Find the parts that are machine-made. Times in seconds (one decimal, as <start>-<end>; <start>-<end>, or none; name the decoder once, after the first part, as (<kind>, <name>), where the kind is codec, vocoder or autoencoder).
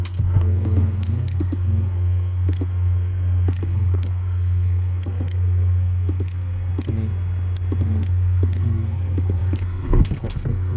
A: 0.0-6.7 (codec, SNAC); 7.8-10.8